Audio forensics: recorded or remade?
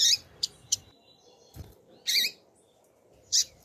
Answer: remade